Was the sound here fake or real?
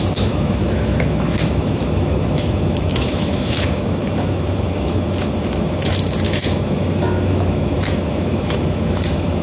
fake